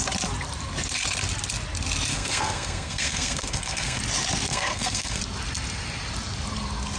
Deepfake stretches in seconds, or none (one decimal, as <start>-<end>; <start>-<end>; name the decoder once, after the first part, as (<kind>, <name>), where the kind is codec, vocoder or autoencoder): 2.1-4.0 (codec, SNAC); 4.5-5.2